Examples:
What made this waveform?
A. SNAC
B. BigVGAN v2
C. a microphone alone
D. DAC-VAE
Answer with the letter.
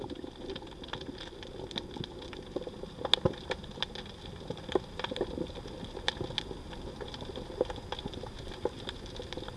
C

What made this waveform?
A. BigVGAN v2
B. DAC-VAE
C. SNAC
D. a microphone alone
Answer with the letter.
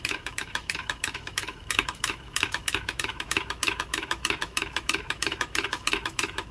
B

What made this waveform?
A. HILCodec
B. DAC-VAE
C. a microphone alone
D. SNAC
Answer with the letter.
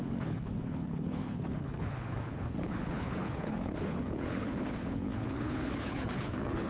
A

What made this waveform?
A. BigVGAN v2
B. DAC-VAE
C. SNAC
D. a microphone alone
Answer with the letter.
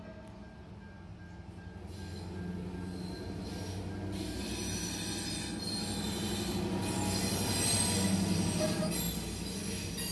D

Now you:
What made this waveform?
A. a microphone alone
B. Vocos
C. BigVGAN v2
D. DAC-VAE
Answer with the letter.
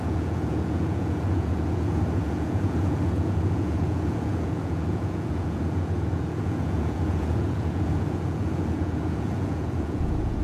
B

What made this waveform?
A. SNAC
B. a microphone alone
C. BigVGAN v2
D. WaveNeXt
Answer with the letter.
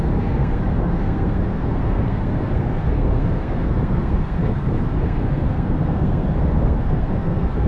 A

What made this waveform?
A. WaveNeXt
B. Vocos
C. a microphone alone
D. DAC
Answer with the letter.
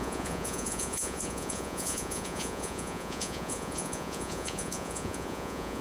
B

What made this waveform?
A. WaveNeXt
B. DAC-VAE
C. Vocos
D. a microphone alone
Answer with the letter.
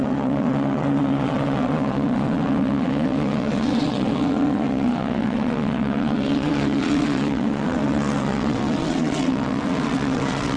A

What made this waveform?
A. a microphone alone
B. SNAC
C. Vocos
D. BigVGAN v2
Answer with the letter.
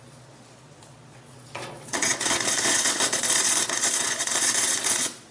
C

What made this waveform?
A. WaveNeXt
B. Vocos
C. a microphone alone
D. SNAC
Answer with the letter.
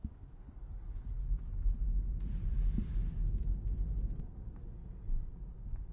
C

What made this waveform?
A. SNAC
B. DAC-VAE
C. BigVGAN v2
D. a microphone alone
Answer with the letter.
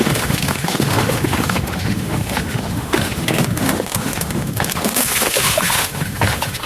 B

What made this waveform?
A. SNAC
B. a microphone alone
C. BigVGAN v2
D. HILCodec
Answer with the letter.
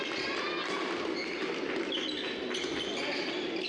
B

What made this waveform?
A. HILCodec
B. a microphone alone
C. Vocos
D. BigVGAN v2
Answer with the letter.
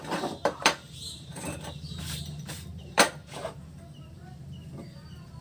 D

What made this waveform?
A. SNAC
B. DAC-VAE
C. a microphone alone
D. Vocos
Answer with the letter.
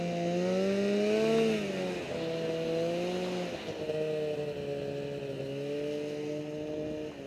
C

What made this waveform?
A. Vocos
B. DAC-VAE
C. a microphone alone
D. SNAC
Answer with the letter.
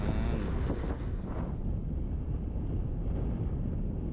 C